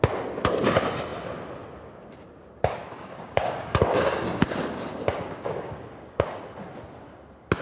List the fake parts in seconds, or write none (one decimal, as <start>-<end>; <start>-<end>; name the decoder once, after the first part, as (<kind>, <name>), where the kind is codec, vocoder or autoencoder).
2.8-4.2 (codec, DAC); 4.9-6.4